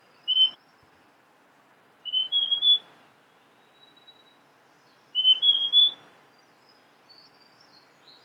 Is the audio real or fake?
real